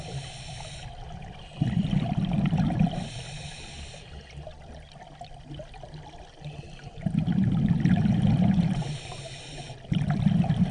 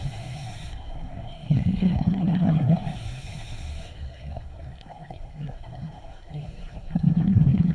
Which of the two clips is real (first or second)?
first